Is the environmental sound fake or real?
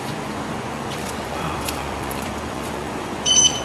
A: fake